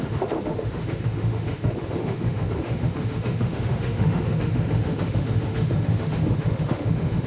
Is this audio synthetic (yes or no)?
yes